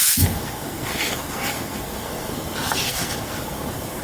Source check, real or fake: fake